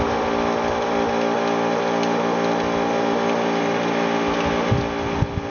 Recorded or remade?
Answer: recorded